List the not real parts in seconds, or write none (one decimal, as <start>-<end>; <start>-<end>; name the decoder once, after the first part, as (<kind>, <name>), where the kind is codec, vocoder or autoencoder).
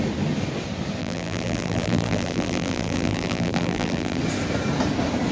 1.0-4.2 (vocoder, BigVGAN v2)